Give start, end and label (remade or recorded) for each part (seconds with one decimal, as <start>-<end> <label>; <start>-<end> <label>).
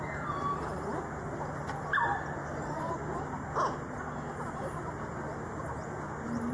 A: 0.0-2.4 recorded; 2.4-2.9 remade; 2.9-6.5 recorded